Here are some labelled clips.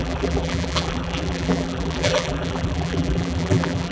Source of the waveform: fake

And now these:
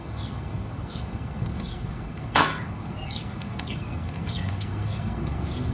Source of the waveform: fake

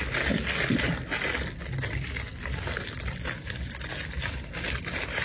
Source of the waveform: real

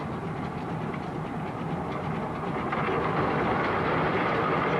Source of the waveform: real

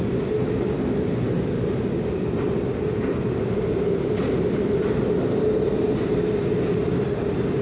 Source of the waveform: real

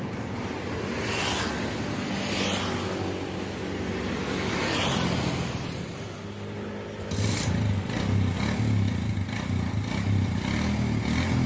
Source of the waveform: real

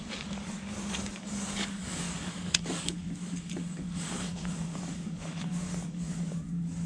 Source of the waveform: fake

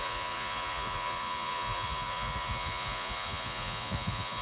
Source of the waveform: fake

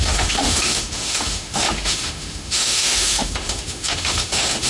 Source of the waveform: fake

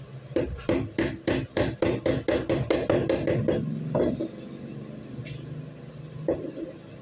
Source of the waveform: real